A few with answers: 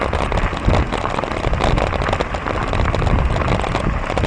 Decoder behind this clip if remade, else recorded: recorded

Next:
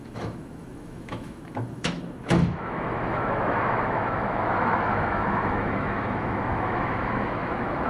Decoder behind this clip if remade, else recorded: remade, autoencoder, DAC-VAE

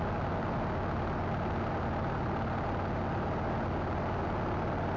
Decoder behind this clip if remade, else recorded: recorded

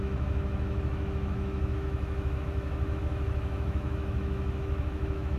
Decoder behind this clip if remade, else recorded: remade, autoencoder, DAC-VAE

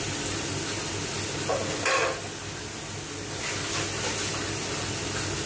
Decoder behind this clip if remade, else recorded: recorded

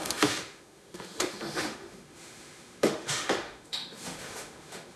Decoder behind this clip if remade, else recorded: remade, autoencoder, DAC-VAE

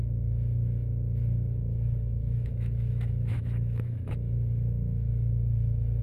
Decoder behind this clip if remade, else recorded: remade, autoencoder, DAC-VAE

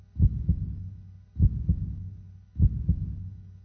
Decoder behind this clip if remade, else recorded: recorded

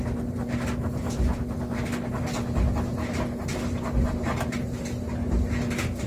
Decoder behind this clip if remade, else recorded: recorded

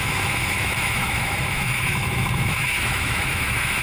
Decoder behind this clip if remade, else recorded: remade, autoencoder, DAC-VAE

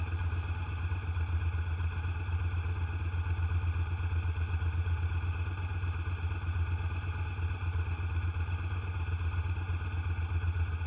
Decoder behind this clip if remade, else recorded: recorded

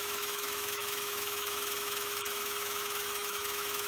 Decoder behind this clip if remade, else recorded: remade, autoencoder, DAC-VAE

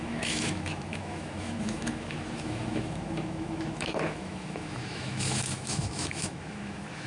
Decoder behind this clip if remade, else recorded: remade, autoencoder, DAC-VAE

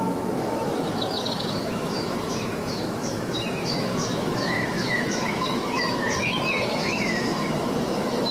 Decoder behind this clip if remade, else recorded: remade, autoencoder, DAC-VAE